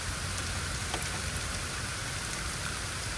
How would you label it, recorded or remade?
recorded